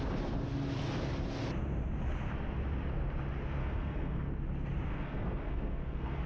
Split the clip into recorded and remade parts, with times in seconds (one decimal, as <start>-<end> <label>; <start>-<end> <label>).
0.0-3.6 recorded; 3.6-4.3 remade; 4.3-4.9 recorded; 4.9-6.3 remade